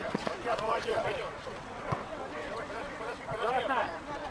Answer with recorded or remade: remade